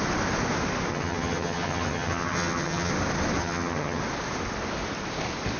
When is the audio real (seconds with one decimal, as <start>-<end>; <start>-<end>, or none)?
0.0-0.9; 2.9-3.4; 4.0-5.6